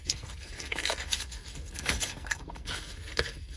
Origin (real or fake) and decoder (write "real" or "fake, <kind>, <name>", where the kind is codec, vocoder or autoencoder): fake, codec, SNAC